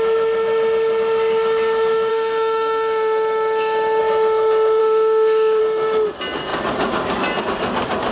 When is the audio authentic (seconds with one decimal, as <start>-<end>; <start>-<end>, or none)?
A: 0.0-2.1; 4.0-4.8; 5.6-8.1